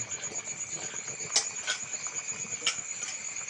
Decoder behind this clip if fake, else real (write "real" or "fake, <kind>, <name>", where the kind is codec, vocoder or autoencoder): real